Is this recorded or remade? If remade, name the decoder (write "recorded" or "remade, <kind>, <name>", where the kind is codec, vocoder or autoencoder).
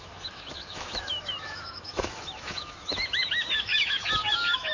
remade, autoencoder, DAC-VAE